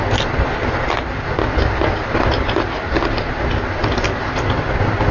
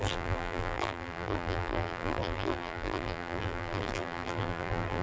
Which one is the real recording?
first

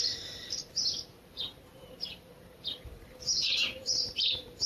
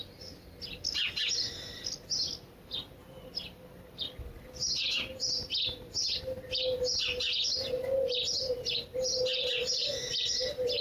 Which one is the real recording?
second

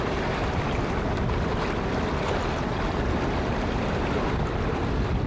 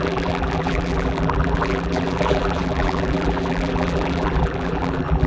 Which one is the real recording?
first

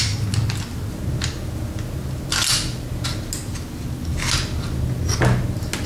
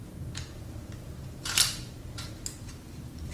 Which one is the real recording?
first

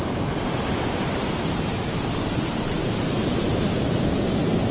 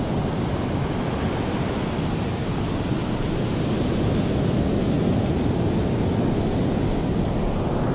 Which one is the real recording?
second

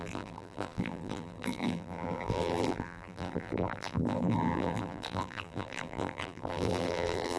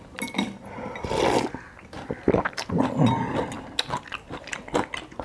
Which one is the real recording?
second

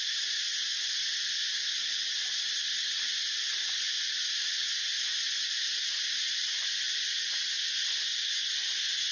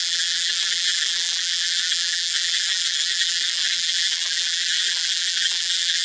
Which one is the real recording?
first